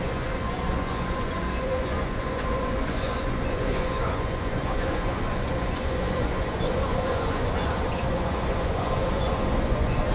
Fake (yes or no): yes